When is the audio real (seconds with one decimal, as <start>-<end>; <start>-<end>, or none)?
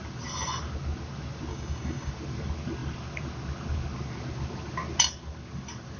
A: 0.0-1.5; 2.1-6.0